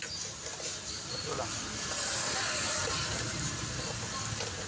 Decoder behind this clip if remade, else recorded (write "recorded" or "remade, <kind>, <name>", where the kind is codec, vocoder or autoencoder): recorded